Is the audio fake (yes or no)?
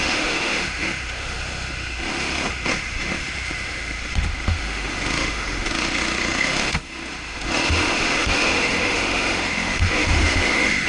yes